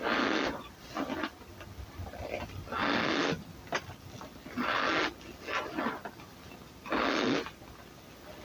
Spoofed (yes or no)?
no